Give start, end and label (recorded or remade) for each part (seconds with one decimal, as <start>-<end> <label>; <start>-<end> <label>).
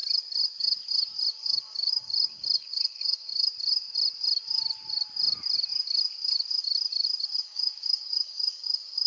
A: 0.0-1.3 recorded; 1.3-3.3 remade; 3.3-7.4 recorded; 7.4-9.1 remade